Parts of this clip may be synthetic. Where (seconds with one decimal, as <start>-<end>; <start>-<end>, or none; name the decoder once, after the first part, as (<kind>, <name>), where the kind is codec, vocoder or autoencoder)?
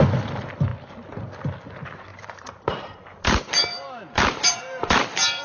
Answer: 2.1-5.4 (vocoder, BigVGAN v2)